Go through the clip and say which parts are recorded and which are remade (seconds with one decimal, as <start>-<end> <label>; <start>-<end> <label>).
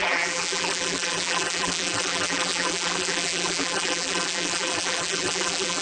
0.0-5.8 remade